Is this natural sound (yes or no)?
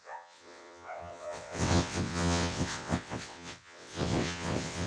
no